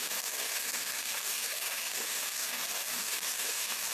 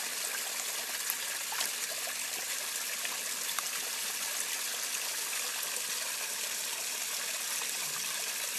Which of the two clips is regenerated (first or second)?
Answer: first